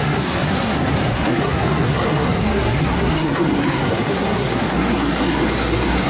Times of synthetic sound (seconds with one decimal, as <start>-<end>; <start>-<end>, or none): 0.0-6.1

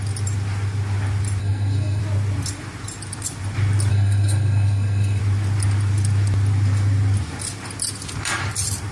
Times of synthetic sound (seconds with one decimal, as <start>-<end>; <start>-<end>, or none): 1.4-2.0; 3.9-5.2